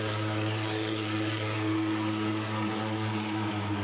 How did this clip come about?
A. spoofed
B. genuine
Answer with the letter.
A